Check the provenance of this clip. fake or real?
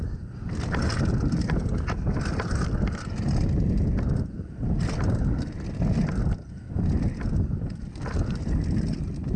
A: real